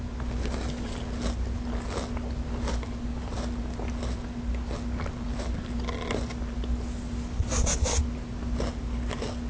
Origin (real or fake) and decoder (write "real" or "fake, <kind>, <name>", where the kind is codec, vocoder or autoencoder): real